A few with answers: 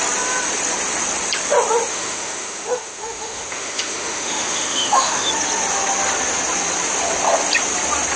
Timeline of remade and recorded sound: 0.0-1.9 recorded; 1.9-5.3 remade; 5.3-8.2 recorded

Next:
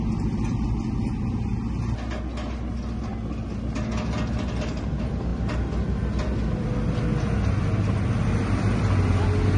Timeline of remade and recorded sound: 0.0-9.6 recorded

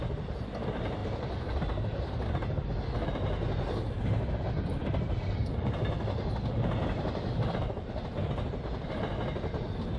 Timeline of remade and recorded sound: 0.0-1.0 recorded; 1.0-2.2 remade; 2.2-4.8 recorded; 4.8-7.9 remade; 7.9-10.0 recorded